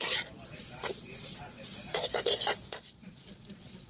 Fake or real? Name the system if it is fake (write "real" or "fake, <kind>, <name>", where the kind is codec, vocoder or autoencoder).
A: fake, vocoder, Vocos